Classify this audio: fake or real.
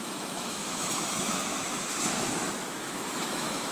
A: fake